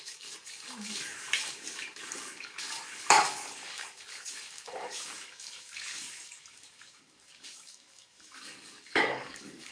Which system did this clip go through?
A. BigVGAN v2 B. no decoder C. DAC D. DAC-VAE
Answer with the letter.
C